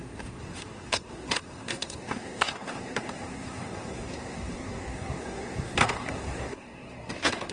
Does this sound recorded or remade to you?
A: remade